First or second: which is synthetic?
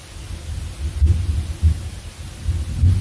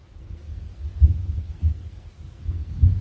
second